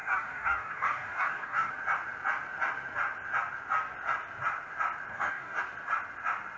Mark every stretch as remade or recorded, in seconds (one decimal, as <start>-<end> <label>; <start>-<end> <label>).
0.0-1.7 remade; 1.7-5.1 recorded; 5.1-5.6 remade; 5.6-6.6 recorded